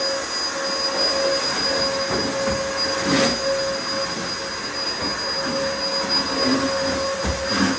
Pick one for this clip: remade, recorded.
recorded